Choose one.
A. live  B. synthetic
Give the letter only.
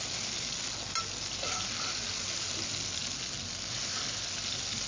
A